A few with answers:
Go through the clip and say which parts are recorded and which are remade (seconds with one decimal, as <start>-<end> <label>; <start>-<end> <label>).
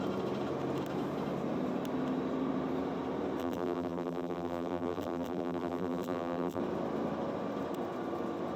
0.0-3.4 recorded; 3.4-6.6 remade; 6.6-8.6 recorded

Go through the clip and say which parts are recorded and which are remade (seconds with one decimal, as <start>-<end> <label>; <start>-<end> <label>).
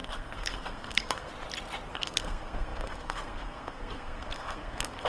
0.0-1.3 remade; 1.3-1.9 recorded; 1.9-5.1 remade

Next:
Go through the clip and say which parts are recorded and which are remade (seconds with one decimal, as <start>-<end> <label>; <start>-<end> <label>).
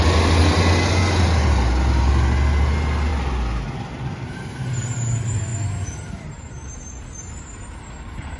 0.0-8.4 recorded